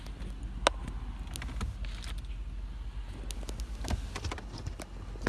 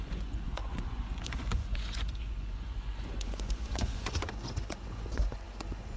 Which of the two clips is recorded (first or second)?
first